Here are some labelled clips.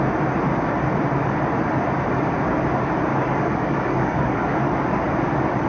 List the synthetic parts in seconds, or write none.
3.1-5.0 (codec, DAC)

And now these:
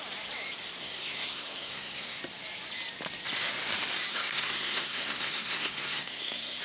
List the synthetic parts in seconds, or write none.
0.8-2.2 (codec, SNAC); 4.1-6.6

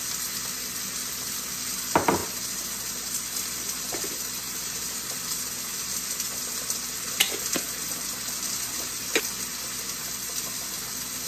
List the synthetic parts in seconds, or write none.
none

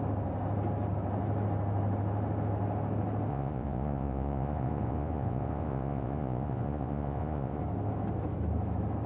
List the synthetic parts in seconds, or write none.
3.3-7.6 (vocoder, Vocos)

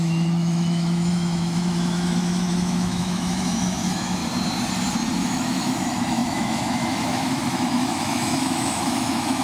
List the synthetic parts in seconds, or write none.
0.0-4.2 (autoencoder, DAC-VAE); 5.2-9.4

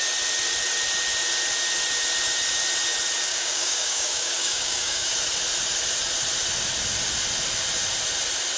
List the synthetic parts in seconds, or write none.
3.3-5.1 (codec, DAC)

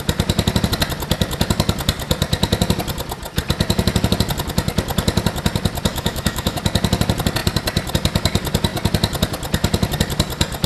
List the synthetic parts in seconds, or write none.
5.9-6.6 (autoencoder, DAC-VAE)